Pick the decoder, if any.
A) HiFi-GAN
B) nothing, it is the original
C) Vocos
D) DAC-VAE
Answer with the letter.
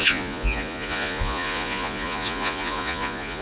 C